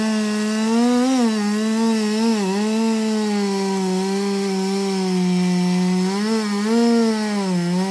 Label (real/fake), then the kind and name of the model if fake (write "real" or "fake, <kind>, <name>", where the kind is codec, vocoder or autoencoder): real